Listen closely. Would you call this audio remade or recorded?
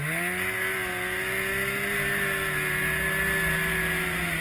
recorded